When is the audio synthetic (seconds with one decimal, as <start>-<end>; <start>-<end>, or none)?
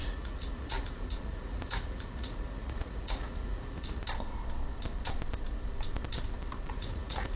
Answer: 0.0-4.0; 6.7-7.4